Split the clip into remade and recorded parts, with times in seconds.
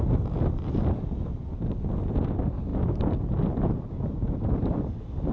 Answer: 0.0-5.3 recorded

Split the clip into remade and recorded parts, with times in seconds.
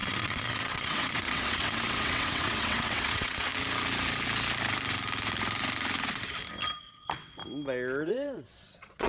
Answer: 0.0-3.5 remade; 3.5-6.8 recorded; 6.8-7.4 remade; 7.4-8.1 recorded; 8.1-9.1 remade